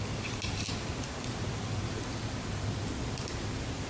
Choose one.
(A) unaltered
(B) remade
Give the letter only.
A